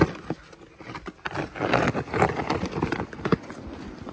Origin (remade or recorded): recorded